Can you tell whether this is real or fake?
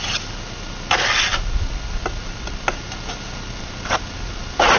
real